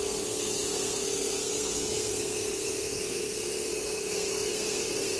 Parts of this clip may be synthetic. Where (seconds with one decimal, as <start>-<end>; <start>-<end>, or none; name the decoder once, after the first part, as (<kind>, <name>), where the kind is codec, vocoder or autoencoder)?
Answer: 0.0-5.2 (codec, SNAC)